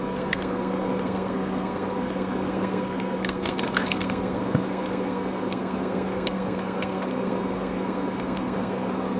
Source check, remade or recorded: remade